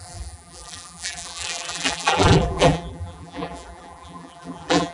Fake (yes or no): yes